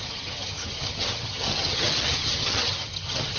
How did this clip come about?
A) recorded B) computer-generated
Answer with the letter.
B